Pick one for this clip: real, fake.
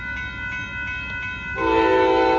real